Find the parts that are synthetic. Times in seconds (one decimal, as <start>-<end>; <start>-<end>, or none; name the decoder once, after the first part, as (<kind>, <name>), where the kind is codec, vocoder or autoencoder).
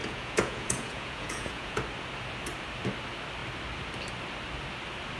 0.0-1.8 (vocoder, Vocos)